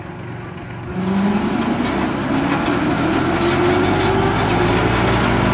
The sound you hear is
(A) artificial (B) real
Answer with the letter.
B